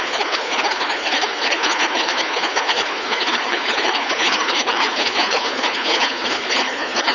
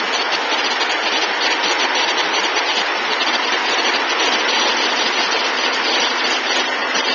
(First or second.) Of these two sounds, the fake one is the first